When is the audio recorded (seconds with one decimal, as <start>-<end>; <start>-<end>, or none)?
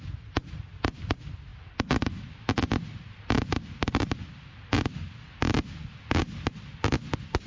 0.0-7.5